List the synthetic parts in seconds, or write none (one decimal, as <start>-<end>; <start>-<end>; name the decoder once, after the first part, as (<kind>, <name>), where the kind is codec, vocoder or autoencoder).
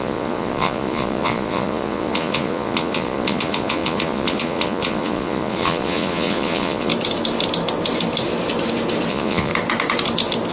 0.0-6.9 (vocoder, Vocos); 9.1-9.5